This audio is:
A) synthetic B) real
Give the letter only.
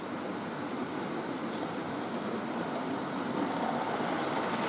B